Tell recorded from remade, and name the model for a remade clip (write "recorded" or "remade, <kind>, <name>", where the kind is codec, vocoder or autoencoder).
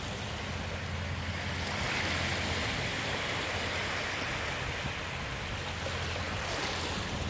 recorded